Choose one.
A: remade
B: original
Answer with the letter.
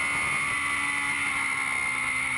B